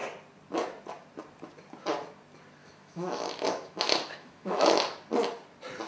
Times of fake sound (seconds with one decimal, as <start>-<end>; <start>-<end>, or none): 2.6-4.7